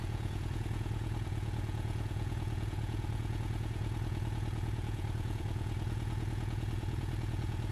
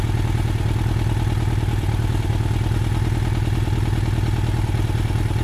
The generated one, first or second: first